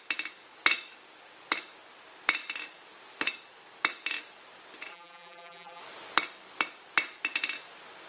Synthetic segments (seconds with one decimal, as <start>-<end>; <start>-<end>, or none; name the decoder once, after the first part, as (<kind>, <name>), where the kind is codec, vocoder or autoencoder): 4.9-5.8 (vocoder, BigVGAN v2)